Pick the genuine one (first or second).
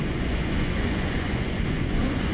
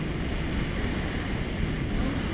second